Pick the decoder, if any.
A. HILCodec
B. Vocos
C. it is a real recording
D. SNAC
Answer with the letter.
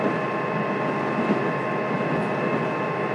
C